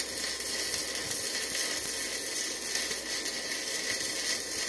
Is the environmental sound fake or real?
real